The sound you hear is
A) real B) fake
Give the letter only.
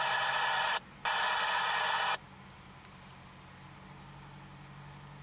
A